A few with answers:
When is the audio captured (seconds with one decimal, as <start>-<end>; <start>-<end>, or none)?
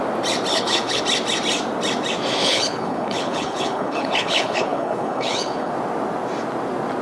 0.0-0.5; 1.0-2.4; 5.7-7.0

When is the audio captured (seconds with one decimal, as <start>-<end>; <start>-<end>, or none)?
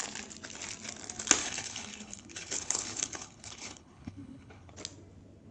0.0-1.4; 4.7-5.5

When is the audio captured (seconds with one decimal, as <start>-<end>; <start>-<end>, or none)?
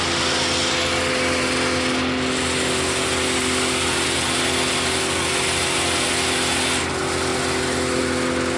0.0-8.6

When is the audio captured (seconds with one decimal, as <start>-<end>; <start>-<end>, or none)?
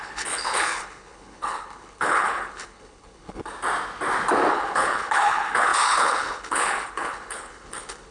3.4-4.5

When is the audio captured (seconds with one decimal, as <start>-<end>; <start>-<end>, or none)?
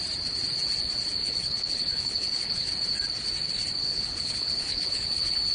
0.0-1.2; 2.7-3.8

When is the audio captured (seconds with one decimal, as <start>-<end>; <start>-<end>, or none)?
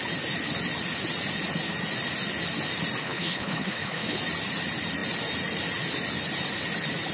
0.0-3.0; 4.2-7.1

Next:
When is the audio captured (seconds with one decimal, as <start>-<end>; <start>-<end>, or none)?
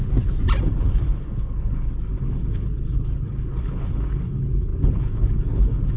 0.0-0.6